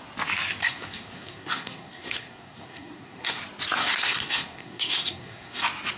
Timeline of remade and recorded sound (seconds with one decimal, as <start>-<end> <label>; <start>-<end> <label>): 0.0-0.6 recorded; 0.6-3.4 remade; 3.4-3.8 recorded; 3.8-5.6 remade; 5.6-6.0 recorded